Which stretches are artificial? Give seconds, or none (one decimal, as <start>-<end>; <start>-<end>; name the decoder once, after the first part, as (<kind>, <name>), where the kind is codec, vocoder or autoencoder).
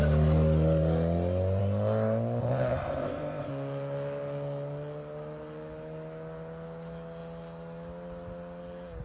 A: 2.4-3.5 (codec, ZipCodec)